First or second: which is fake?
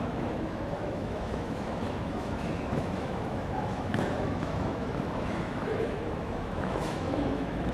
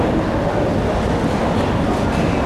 first